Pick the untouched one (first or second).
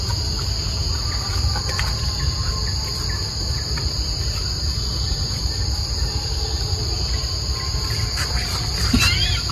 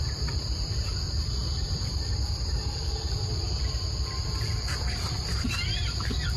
first